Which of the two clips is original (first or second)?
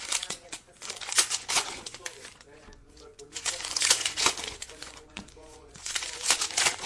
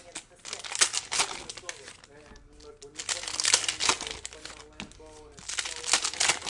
second